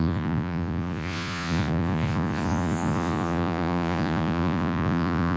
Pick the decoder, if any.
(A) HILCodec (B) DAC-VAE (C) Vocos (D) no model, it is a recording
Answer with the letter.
C